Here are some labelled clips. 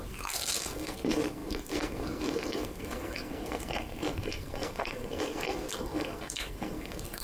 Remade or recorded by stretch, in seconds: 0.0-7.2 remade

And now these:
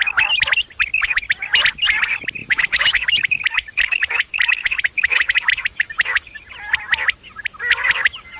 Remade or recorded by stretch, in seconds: 0.0-2.4 recorded; 2.4-6.4 remade; 6.4-8.4 recorded

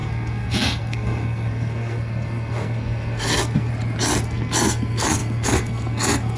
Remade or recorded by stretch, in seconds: 0.0-3.7 remade; 3.7-4.2 recorded; 4.2-6.4 remade

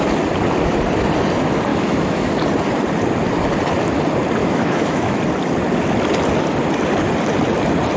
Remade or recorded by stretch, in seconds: 0.0-1.7 recorded; 1.7-2.3 remade; 2.3-4.4 recorded; 4.4-5.2 remade; 5.2-8.0 recorded

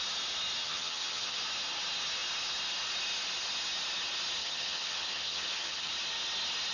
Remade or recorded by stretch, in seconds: 0.0-0.6 recorded; 0.6-1.4 remade; 1.4-4.4 recorded; 4.4-5.9 remade; 5.9-6.7 recorded